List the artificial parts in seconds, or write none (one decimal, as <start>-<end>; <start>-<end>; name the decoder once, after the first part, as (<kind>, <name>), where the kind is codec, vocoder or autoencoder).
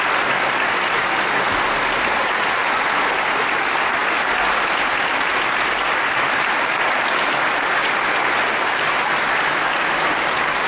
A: none